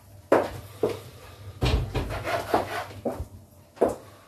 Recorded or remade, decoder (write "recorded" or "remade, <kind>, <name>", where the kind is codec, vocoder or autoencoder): recorded